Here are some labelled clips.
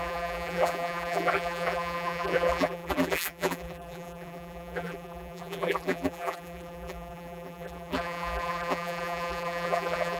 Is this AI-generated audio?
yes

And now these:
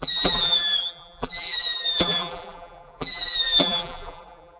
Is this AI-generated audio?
yes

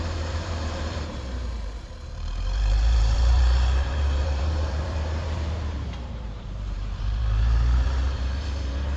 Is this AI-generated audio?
yes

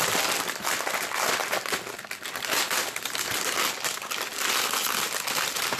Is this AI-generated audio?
no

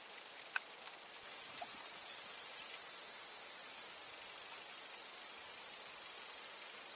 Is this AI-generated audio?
no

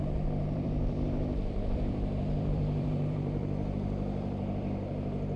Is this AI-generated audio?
yes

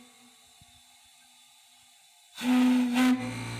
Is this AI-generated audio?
no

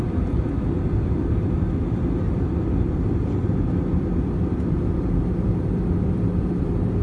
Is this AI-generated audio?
yes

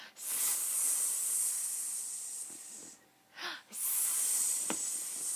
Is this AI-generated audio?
no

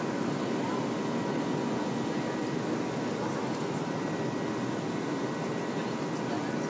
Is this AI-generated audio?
no